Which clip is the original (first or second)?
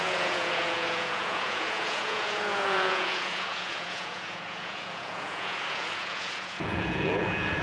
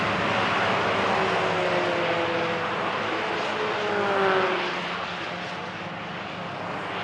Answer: second